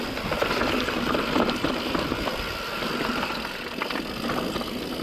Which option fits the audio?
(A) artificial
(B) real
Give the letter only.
B